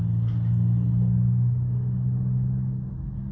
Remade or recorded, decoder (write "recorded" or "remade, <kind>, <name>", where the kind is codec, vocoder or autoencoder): recorded